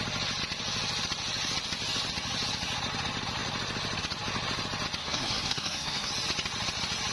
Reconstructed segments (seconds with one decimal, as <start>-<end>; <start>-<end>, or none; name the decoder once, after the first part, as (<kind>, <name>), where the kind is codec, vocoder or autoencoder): 5.0-6.1 (codec, SNAC)